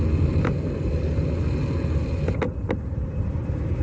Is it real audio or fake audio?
real